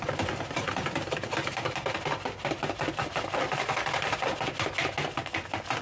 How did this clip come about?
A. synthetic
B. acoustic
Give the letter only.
B